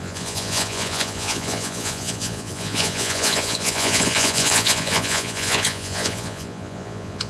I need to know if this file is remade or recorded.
remade